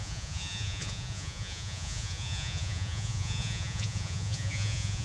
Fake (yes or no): yes